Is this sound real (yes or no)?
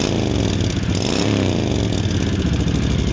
yes